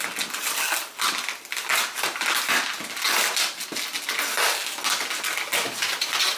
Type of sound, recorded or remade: recorded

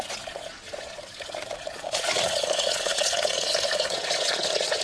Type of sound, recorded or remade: remade